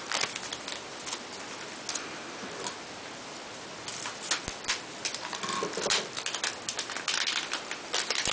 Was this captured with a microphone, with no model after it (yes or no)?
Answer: yes